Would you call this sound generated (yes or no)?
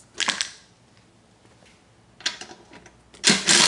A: no